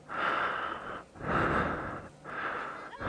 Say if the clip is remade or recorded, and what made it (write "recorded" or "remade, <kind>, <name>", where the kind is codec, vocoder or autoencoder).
recorded